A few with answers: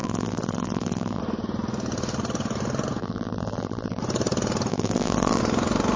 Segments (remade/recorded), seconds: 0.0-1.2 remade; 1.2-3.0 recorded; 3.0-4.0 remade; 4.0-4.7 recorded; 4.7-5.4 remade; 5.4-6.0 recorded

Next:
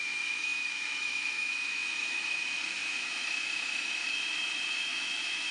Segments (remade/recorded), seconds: 0.0-5.5 remade

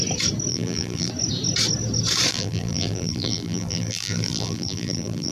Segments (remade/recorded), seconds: 0.0-0.5 recorded; 0.5-1.1 remade; 1.1-2.3 recorded; 2.3-5.3 remade

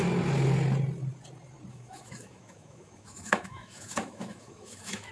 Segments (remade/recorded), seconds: 0.0-1.7 recorded; 1.7-5.1 remade

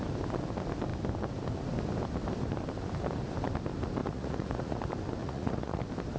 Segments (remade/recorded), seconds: 0.0-4.0 recorded; 4.0-4.8 remade; 4.8-5.2 recorded; 5.2-5.8 remade; 5.8-6.2 recorded

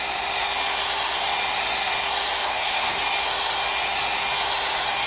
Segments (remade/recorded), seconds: 0.0-2.4 recorded; 2.4-3.0 remade; 3.0-5.1 recorded